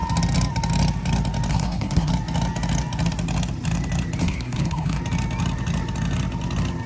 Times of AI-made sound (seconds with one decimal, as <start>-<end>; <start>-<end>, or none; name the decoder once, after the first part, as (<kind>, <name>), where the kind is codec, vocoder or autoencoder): 1.5-2.1 (codec, SNAC); 4.2-5.0